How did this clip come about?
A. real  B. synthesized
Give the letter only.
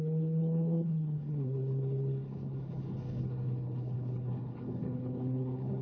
B